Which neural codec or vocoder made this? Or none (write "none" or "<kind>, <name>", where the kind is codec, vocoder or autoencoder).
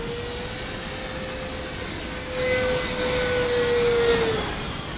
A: none